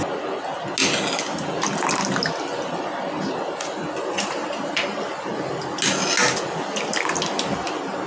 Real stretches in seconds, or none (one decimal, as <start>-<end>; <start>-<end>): 0.0-8.1